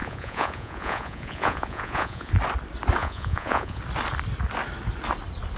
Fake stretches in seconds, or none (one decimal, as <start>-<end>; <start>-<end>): 0.0-2.3; 3.0-3.8